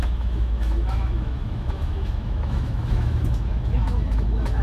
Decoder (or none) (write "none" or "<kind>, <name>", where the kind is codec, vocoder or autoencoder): autoencoder, DAC-VAE